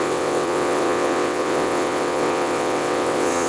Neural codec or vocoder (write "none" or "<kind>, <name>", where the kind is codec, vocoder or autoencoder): vocoder, WaveNeXt